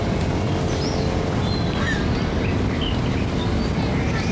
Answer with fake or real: real